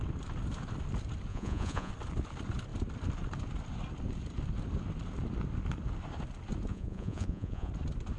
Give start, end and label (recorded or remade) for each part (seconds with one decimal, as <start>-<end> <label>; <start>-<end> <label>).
0.0-1.3 recorded; 1.3-1.9 remade; 1.9-6.7 recorded; 6.7-7.7 remade; 7.7-8.2 recorded